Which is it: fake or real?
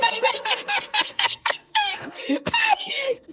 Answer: fake